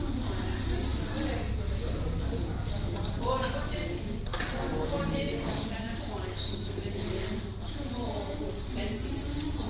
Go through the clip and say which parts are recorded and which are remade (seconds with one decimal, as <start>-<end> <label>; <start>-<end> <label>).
0.0-6.3 recorded; 6.3-6.8 remade; 6.8-9.7 recorded